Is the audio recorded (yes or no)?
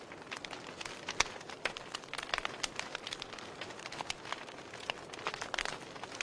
yes